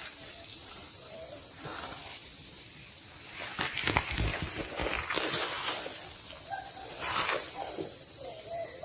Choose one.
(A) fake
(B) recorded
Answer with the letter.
A